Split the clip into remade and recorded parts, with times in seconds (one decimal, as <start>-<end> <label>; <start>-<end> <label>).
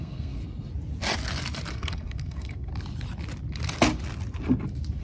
0.0-0.4 remade; 0.4-1.7 recorded; 1.7-2.7 remade; 2.7-5.0 recorded